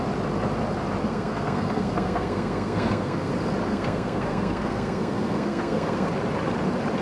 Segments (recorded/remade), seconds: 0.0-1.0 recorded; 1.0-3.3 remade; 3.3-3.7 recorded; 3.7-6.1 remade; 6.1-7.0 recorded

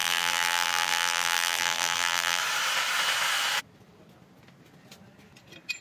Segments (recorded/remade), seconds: 0.0-2.4 remade; 2.4-5.8 recorded

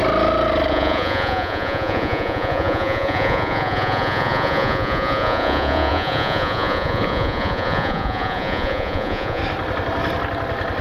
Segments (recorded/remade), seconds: 0.0-0.7 recorded; 0.7-9.4 remade; 9.4-10.8 recorded

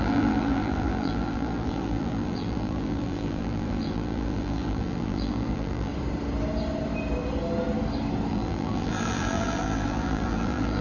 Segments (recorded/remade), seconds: 0.0-5.9 remade; 5.9-8.3 recorded; 8.3-10.8 remade

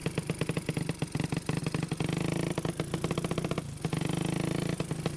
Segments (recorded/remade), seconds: 0.0-5.2 recorded

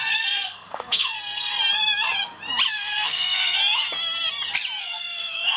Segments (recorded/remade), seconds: 0.0-1.5 remade; 1.5-2.7 recorded; 2.7-3.6 remade; 3.6-4.8 recorded; 4.8-5.6 remade

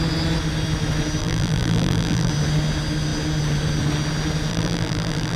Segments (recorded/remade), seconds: 0.0-1.2 recorded; 1.2-2.3 remade; 2.3-4.5 recorded; 4.5-5.4 remade